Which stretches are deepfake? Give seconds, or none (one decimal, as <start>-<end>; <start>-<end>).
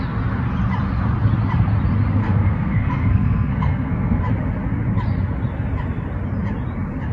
2.2-4.2